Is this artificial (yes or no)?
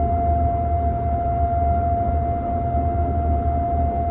no